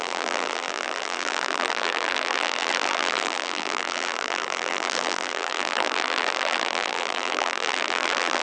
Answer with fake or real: fake